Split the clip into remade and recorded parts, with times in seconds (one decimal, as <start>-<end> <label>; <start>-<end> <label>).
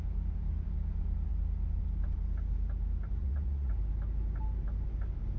0.0-3.2 recorded; 3.2-3.7 remade; 3.7-5.4 recorded